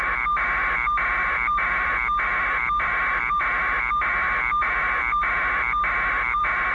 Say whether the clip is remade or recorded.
remade